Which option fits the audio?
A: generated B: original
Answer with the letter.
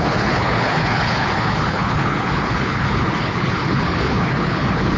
A